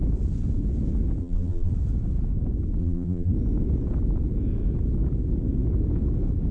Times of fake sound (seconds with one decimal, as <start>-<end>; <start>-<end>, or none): 1.2-1.7; 2.8-3.3